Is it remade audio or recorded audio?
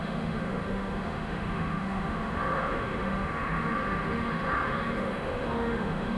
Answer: remade